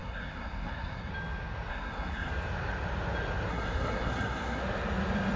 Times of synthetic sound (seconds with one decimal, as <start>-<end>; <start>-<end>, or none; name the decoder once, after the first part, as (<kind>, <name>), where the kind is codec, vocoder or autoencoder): 0.0-1.1 (codec, SNAC); 1.7-2.3; 3.5-4.6